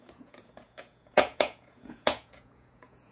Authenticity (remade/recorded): remade